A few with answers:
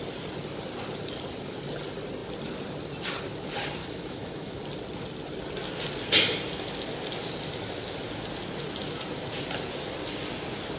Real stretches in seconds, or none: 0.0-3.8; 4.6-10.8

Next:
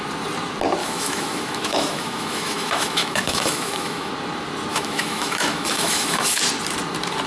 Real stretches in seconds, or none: 0.0-0.8; 4.1-4.7; 6.4-7.3

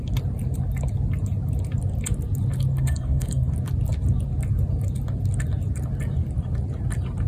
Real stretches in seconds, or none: 0.0-2.7; 3.5-7.3

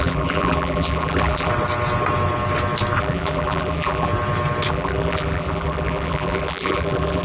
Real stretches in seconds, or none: 1.5-3.0; 4.1-4.7